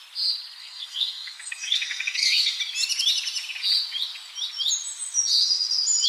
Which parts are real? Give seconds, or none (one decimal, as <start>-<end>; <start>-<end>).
0.0-0.6; 2.6-6.1